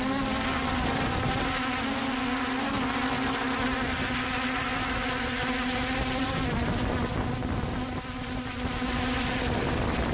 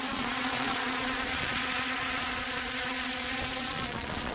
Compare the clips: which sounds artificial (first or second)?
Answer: second